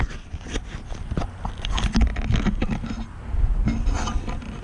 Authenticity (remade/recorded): recorded